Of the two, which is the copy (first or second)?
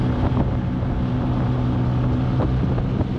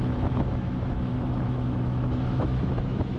second